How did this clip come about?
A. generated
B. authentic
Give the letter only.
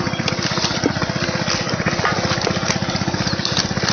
B